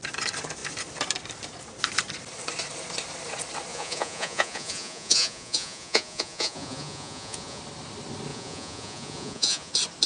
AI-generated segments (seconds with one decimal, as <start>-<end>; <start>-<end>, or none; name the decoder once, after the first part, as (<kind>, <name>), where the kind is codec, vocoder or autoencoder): 3.7-7.6 (vocoder, Vocos); 8.3-9.7